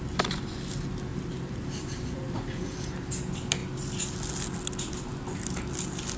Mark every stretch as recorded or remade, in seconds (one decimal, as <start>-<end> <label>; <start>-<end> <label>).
0.0-1.1 recorded; 1.1-3.0 remade; 3.0-6.2 recorded